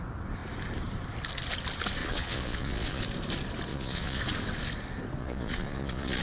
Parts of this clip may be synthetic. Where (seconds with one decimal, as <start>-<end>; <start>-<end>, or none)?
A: 2.0-3.0; 3.7-4.2; 5.2-6.2

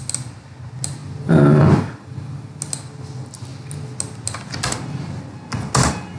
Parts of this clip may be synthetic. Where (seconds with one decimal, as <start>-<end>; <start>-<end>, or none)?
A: none

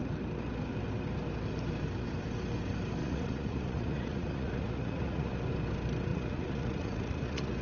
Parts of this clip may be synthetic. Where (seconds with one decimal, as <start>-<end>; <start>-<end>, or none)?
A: 3.0-5.3; 6.1-7.6

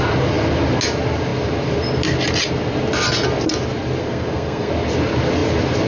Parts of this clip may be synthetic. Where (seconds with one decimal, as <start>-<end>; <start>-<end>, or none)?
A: 4.0-4.7